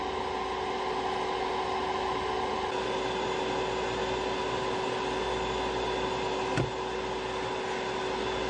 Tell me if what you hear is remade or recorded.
recorded